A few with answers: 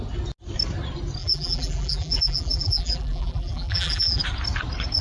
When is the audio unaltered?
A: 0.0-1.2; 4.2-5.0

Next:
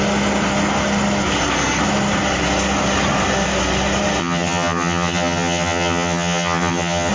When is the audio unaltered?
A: 0.0-4.2

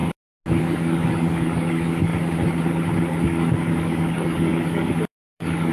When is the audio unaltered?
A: 0.0-0.6; 2.1-3.2

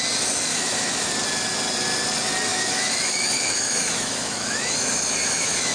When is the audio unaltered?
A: 0.0-0.5; 1.1-2.5

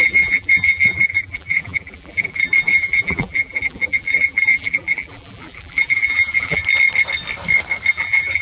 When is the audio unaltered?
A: 6.6-7.9

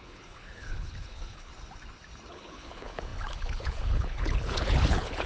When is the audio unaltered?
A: 1.5-2.3

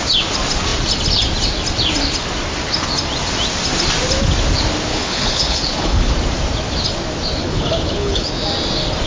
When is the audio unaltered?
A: 0.0-4.9; 6.1-7.4; 8.3-9.1

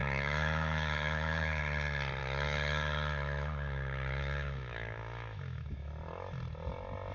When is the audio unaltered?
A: 1.6-2.2; 5.9-7.1